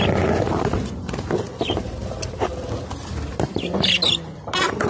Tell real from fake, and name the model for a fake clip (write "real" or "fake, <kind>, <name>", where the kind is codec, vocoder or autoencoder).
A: real